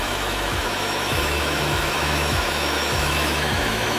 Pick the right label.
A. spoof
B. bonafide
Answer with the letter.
A